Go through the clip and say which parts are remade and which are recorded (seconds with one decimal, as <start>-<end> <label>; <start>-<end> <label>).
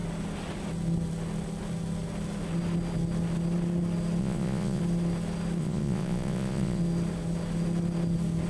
0.0-4.2 recorded; 4.2-4.8 remade; 4.8-5.6 recorded; 5.6-6.8 remade; 6.8-8.5 recorded